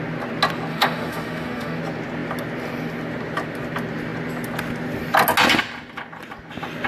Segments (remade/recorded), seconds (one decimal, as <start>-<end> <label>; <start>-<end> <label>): 0.0-0.7 recorded; 0.7-1.8 remade; 1.8-6.9 recorded